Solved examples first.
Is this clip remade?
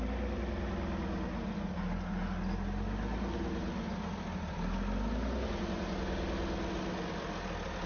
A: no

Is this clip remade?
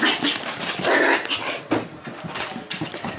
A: no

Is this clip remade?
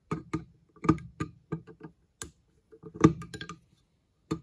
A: no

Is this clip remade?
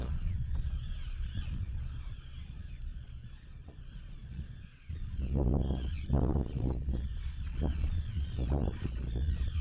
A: yes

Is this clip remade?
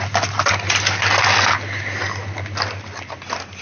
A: no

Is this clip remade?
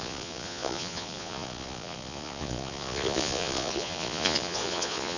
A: yes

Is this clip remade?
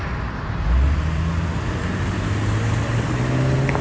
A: no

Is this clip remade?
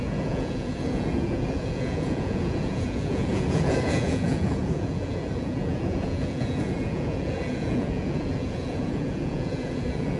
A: yes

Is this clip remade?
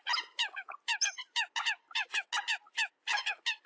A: no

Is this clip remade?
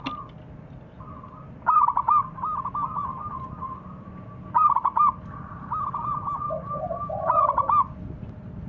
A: no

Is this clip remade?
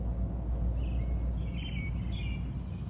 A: no